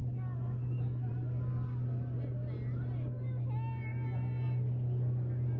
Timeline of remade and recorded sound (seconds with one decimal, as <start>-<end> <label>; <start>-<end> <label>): 0.0-5.6 recorded